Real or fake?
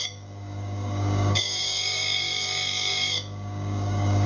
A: fake